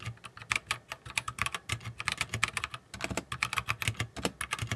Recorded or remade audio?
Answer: recorded